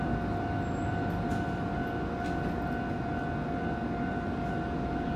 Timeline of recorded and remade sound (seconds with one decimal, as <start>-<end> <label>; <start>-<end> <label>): 0.0-5.2 recorded